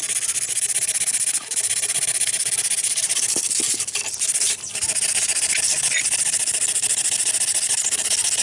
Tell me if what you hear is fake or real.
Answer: real